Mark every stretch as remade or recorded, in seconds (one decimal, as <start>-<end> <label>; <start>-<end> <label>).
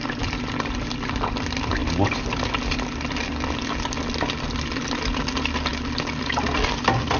0.0-7.2 recorded